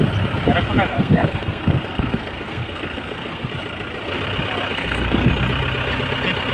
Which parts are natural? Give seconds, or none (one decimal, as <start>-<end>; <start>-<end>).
0.0-0.9; 3.5-4.7; 5.3-6.5